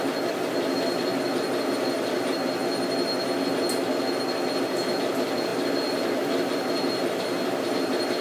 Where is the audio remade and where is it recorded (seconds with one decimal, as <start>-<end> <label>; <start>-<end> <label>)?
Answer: 0.0-2.6 remade; 2.6-4.6 recorded; 4.6-8.2 remade